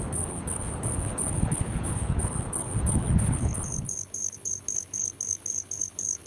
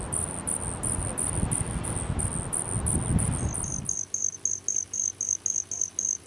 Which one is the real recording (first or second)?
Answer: second